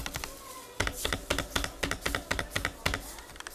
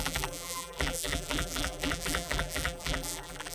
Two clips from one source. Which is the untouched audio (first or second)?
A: first